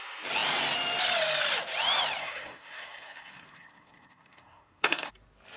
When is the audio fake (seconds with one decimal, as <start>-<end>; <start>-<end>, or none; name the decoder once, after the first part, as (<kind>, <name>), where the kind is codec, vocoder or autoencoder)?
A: 2.2-5.1 (codec, SNAC)